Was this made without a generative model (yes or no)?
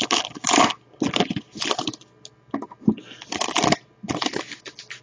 yes